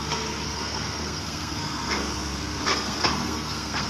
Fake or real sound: fake